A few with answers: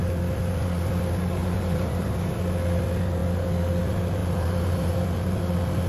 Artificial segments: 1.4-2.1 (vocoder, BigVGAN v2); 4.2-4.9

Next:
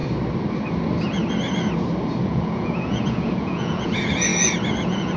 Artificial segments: 2.2-4.3 (vocoder, Vocos); 4.8-5.2

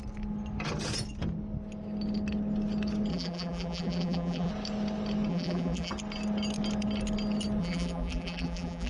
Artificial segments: 3.1-4.5 (vocoder, BigVGAN v2); 5.3-5.9; 7.6-8.9

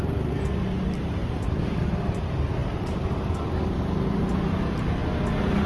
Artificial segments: 1.2-2.2 (vocoder, BigVGAN v2)

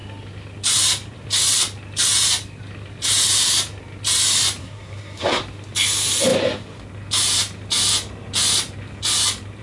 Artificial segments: 4.6-5.4 (codec, SNAC)

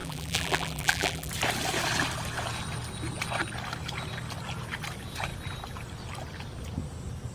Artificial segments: 0.0-1.3 (vocoder, BigVGAN v2)

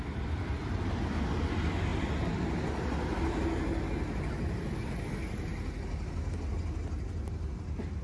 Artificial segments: none

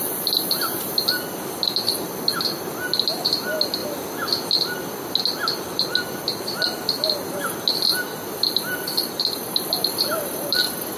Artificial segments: none